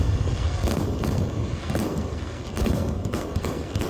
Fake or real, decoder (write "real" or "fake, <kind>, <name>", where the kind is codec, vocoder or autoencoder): fake, codec, SNAC